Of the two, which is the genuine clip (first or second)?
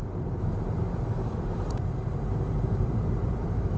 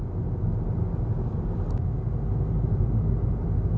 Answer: second